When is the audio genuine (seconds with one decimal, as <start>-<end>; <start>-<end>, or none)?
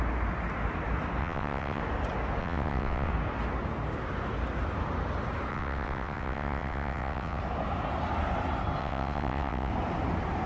0.0-1.2; 1.8-2.4; 3.1-5.5; 7.4-8.8; 9.7-10.5